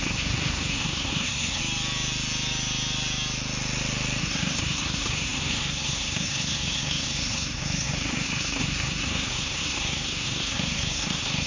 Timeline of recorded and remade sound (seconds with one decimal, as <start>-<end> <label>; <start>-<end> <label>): 0.0-1.6 remade; 1.6-4.2 recorded; 4.2-11.5 remade